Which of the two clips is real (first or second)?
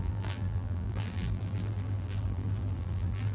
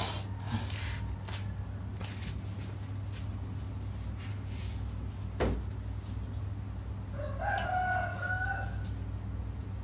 second